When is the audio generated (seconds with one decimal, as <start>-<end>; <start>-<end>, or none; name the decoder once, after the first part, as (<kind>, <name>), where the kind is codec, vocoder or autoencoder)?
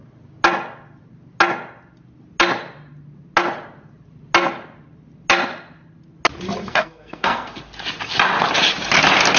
6.6-7.6 (codec, SNAC)